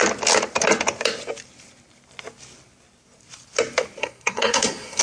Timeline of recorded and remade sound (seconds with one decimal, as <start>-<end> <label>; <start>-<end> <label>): 0.0-4.0 recorded; 4.0-5.0 remade